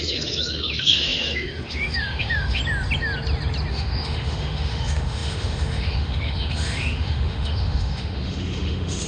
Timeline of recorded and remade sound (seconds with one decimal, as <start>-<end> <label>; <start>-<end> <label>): 0.0-2.6 remade; 2.6-3.7 recorded; 3.7-9.1 remade